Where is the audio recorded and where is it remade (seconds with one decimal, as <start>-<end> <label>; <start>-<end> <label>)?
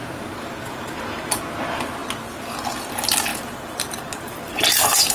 0.0-1.4 remade; 1.4-3.3 recorded; 3.3-5.1 remade